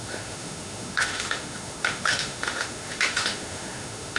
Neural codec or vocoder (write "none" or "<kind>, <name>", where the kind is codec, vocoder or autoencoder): autoencoder, DAC-VAE